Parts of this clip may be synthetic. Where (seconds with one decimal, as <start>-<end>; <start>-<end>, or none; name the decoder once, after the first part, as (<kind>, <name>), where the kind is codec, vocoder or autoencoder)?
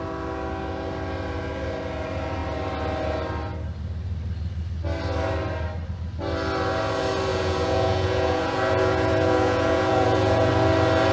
7.3-10.5 (vocoder, Vocos)